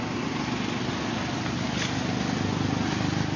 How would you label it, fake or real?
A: real